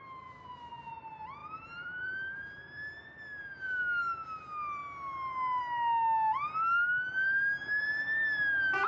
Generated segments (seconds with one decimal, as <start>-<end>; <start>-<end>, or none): 1.4-3.0